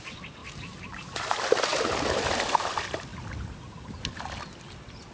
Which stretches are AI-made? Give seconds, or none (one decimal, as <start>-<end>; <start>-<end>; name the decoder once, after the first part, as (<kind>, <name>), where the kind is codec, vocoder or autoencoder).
none